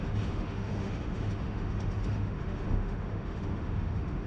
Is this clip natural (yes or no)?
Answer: no